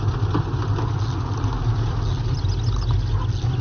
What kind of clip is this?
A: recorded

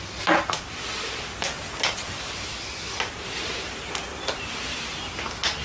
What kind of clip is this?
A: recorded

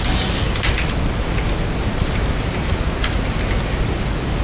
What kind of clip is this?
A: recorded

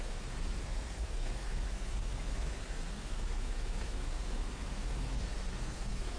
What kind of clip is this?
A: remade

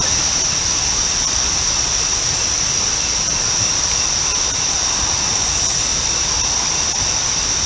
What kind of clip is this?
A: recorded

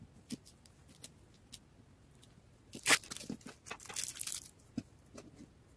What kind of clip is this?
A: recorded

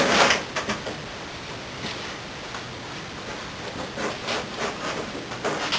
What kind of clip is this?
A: recorded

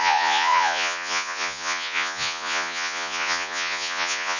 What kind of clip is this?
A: remade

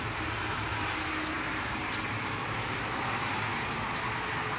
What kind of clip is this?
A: recorded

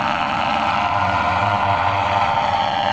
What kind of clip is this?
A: remade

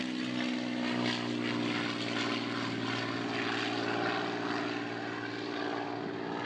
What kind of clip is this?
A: recorded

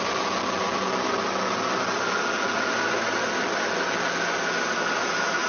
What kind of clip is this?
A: recorded